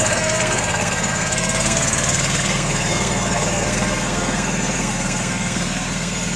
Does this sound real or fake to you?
fake